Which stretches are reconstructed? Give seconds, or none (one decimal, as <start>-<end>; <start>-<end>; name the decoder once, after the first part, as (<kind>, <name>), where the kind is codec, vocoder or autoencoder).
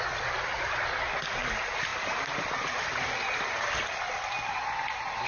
none